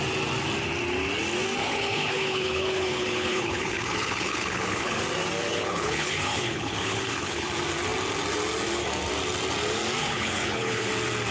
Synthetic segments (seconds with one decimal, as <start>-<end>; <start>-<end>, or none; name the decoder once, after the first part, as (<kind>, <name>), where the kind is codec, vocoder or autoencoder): 1.6-5.0 (codec, HILCodec); 5.5-7.5; 10.0-10.9